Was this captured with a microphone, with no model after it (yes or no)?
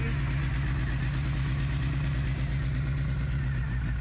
yes